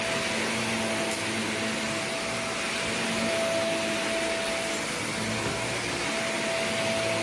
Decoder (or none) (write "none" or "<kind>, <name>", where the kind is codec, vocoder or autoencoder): none